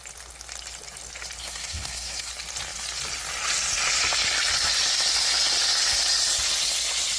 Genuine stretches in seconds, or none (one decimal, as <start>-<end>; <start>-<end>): 0.0-1.4; 2.3-7.2